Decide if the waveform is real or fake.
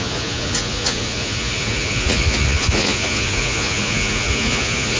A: fake